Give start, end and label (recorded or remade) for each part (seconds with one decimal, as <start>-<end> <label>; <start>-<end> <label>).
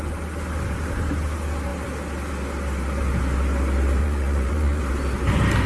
0.0-4.0 recorded; 4.0-4.8 remade; 4.8-5.7 recorded